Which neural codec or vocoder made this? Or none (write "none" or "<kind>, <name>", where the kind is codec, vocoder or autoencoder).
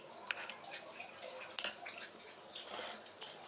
none